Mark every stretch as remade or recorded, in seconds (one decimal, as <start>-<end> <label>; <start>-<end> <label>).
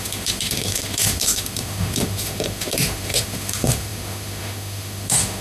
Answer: 0.0-5.4 remade